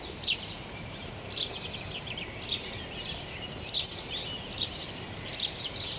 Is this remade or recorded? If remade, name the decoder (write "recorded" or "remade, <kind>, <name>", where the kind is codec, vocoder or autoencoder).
remade, vocoder, BigVGAN v2